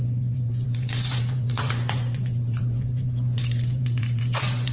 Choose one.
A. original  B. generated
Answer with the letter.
B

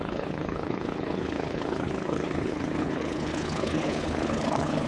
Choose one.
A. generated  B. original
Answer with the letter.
A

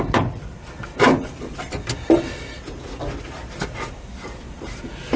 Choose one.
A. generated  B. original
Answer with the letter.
B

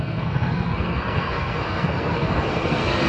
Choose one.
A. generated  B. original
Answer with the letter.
A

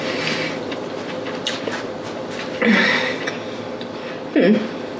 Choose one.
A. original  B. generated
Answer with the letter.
A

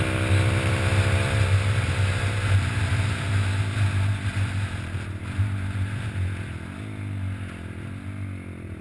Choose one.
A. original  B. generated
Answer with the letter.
A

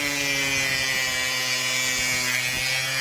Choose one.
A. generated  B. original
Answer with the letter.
B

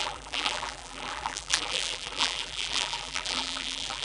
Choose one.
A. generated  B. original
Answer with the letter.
A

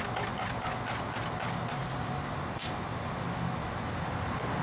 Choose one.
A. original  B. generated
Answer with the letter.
A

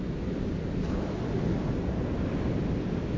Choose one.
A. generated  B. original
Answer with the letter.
B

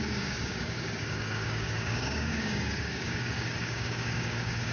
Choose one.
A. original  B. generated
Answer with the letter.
B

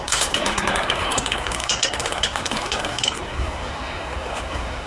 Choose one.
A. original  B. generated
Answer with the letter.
B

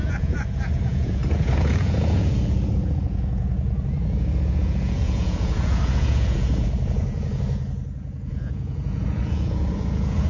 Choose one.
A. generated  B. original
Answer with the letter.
A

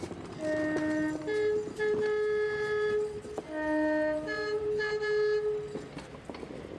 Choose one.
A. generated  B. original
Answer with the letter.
B